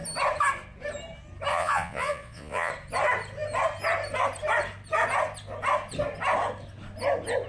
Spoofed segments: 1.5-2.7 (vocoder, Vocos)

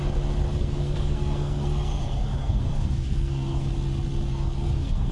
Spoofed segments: 0.6-3.7 (codec, SNAC); 4.3-5.1

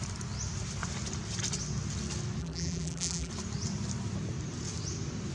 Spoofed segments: 2.4-3.3 (vocoder, BigVGAN v2)

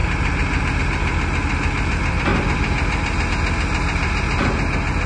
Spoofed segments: none

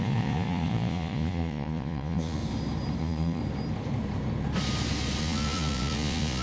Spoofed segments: 0.0-2.4 (vocoder, Vocos); 3.0-3.4; 5.2-6.4